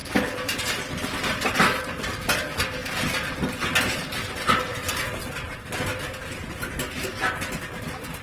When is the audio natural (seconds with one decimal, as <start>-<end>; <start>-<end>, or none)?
0.0-8.2